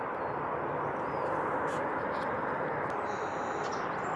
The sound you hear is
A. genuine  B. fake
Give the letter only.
A